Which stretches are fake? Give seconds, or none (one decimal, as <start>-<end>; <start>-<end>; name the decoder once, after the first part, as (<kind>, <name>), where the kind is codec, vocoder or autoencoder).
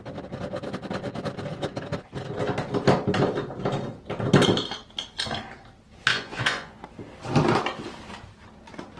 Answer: 6.1-6.8 (vocoder, Vocos)